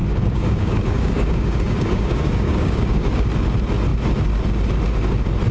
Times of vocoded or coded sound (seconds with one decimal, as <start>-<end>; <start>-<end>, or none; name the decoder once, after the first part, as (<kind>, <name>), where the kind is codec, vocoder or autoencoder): 0.0-3.3 (codec, DAC)